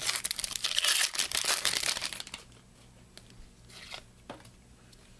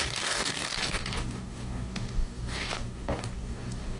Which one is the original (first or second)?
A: first